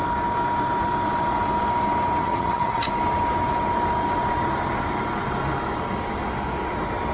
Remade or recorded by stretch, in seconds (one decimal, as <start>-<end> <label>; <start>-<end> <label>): 0.0-2.2 recorded; 2.2-2.9 remade; 2.9-7.1 recorded